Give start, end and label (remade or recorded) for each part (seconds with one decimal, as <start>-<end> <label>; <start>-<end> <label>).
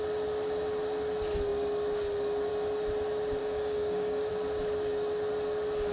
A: 0.0-3.4 recorded; 3.4-4.3 remade; 4.3-5.9 recorded